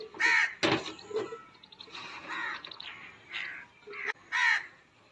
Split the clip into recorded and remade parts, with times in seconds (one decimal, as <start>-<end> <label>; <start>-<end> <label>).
0.0-1.4 recorded; 1.4-2.7 remade; 2.7-5.1 recorded